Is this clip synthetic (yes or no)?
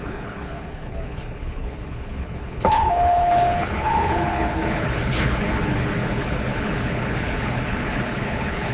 yes